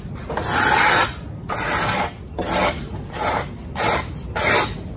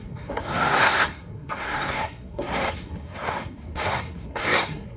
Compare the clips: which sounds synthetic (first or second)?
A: second